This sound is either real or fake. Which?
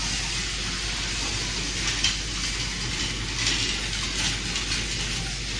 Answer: real